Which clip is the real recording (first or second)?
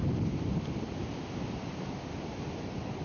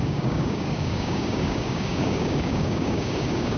first